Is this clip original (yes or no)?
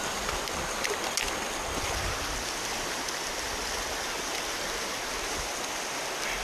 yes